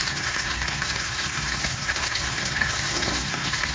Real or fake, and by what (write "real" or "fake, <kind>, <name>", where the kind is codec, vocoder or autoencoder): fake, codec, SNAC